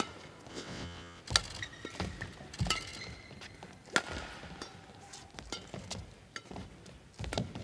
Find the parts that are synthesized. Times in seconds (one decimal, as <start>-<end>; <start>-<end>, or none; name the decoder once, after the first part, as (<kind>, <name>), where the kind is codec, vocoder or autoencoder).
0.5-1.2 (vocoder, WaveNeXt)